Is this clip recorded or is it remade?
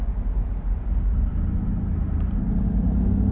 recorded